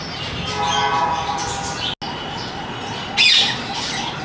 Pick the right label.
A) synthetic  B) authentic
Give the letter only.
B